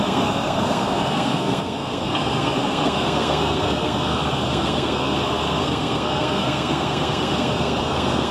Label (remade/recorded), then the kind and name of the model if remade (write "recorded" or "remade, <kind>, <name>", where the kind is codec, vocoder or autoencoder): remade, codec, SNAC